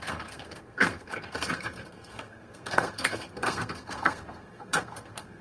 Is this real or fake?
fake